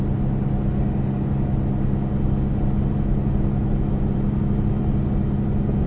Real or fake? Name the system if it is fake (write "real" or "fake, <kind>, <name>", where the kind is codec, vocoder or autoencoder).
real